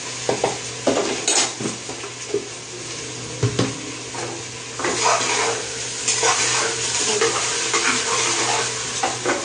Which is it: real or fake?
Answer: real